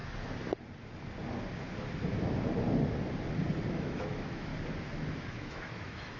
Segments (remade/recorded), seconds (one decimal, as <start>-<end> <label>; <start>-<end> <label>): 0.0-3.7 recorded; 3.7-4.5 remade; 4.5-5.1 recorded; 5.1-6.2 remade